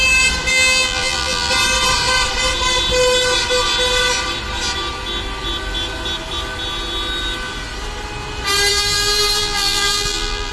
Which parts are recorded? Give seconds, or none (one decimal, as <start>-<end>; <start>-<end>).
0.0-0.5; 1.5-8.7